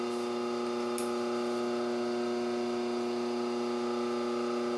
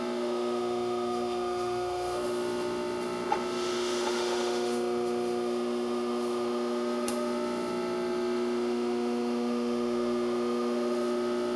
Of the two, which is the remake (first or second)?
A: second